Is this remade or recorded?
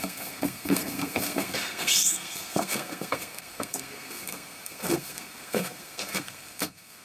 remade